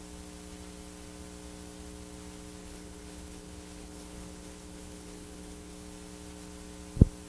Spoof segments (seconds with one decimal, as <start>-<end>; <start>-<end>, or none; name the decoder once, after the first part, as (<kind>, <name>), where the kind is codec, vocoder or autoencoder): 2.6-5.7 (codec, HILCodec)